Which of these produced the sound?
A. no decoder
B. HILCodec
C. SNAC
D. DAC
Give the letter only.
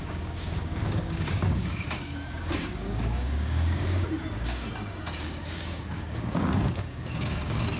D